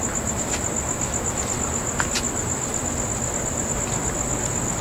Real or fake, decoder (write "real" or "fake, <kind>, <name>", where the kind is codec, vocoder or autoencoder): real